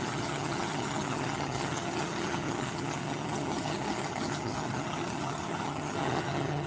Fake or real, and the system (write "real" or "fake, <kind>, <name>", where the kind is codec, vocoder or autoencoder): fake, vocoder, HiFi-GAN